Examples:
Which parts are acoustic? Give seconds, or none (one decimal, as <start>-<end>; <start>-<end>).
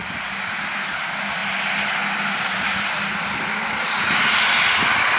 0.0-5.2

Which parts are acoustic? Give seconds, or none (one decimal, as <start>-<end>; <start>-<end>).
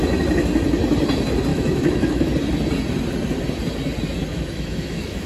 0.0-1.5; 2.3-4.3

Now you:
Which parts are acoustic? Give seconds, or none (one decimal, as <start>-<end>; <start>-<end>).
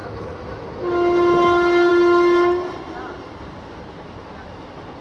0.7-5.0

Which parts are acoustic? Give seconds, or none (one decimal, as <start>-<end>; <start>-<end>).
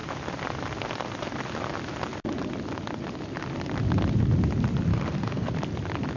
0.0-4.9; 5.5-6.2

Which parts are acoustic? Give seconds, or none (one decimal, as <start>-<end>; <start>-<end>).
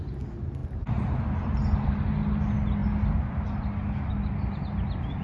0.0-5.2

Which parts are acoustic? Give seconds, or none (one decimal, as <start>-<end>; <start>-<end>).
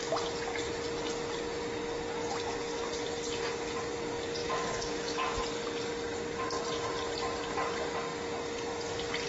0.0-4.4; 5.5-9.3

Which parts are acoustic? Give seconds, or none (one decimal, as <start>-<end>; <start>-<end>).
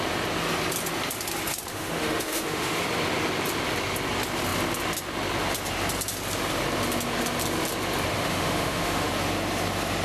0.0-1.7; 2.8-8.1; 9.1-10.0